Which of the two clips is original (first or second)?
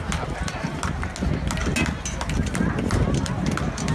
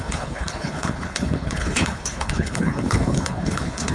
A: first